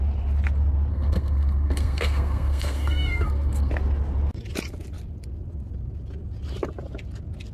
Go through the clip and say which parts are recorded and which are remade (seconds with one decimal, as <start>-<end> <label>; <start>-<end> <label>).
0.0-0.9 recorded; 0.9-3.7 remade; 3.7-7.5 recorded